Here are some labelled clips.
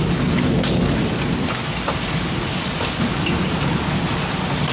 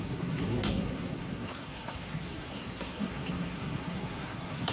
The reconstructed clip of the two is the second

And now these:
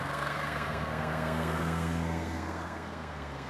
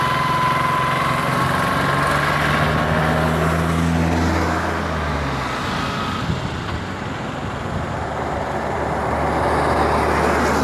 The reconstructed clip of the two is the first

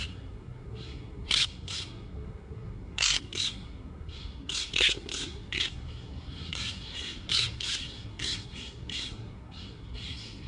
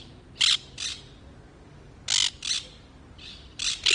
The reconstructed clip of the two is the first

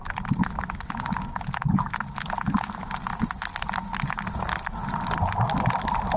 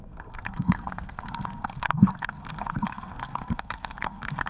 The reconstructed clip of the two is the second